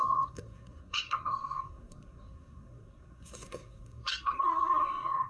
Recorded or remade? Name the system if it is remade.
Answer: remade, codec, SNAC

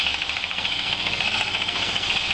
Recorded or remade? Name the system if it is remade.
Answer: remade, codec, SNAC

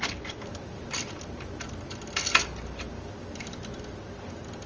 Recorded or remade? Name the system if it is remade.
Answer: recorded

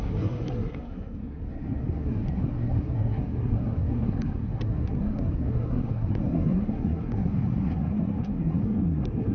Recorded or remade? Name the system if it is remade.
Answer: remade, codec, SNAC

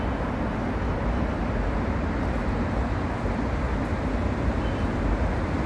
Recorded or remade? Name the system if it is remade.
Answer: recorded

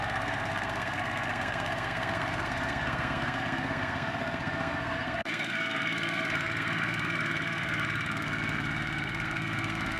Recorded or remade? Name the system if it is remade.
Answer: remade, codec, SNAC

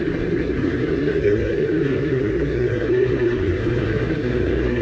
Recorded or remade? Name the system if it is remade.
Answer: remade, codec, SNAC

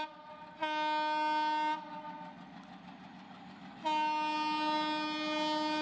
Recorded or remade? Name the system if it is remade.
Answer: recorded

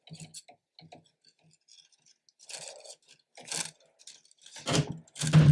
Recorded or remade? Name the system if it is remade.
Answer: recorded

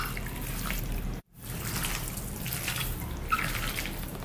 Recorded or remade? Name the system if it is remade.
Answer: recorded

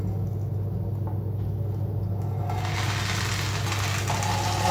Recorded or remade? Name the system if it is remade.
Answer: recorded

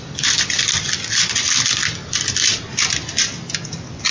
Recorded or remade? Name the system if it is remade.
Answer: recorded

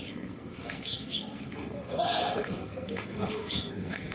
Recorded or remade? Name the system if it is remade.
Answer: remade, codec, SNAC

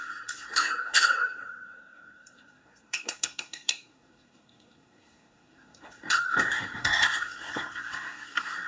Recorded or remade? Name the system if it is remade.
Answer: remade, codec, SNAC